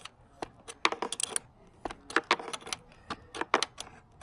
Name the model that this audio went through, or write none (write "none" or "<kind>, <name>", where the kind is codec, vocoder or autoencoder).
none